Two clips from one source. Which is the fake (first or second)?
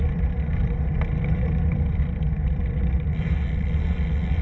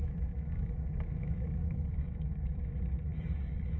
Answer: second